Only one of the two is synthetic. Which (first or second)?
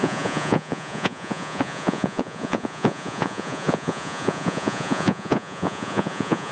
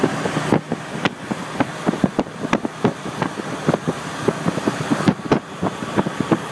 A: first